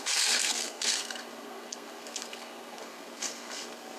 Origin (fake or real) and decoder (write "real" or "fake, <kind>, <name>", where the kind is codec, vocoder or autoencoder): fake, codec, SNAC